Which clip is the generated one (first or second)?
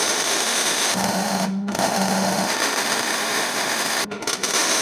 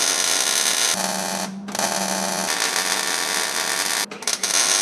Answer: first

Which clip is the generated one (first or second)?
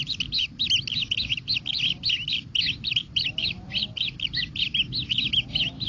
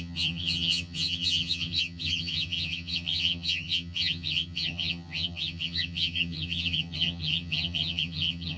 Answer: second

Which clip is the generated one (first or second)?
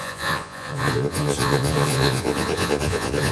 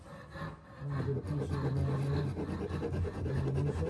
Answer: first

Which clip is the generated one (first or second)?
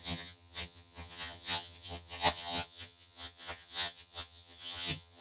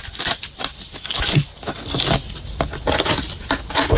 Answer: first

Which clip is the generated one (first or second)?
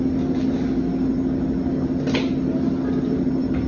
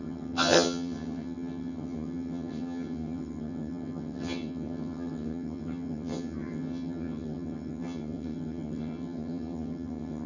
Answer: second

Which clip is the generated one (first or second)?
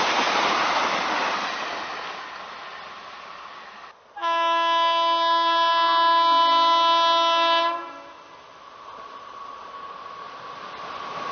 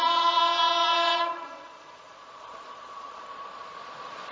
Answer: second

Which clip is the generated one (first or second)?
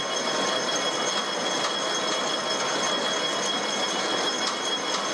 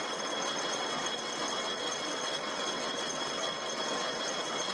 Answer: second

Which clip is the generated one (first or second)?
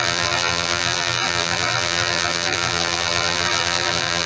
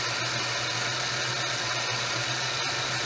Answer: first